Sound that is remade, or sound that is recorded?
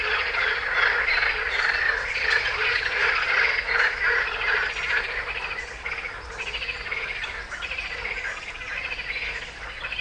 recorded